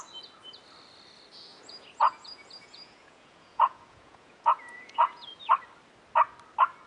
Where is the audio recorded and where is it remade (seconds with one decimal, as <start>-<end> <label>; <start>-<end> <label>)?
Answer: 0.0-1.5 recorded; 1.5-5.5 remade; 5.5-6.9 recorded